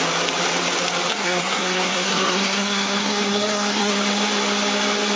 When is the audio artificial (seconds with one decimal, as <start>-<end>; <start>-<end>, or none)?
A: 1.1-3.9